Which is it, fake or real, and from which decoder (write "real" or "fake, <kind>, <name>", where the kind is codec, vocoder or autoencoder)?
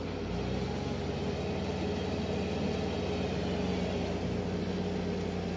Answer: real